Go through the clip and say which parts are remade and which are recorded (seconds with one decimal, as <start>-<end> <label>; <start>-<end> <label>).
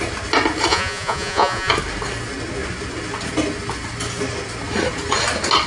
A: 0.0-0.7 recorded; 0.7-1.7 remade; 1.7-5.7 recorded